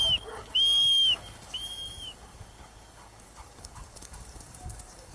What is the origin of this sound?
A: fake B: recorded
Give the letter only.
A